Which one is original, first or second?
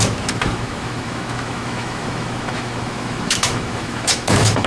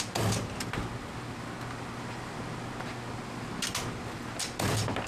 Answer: second